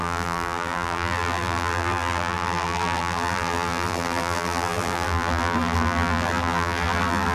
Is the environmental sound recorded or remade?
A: remade